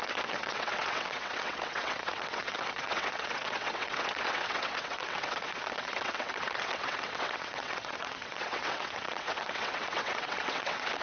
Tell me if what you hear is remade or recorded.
remade